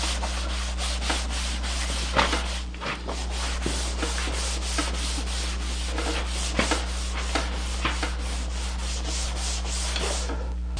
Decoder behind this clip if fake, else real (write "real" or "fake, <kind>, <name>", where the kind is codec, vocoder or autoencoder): real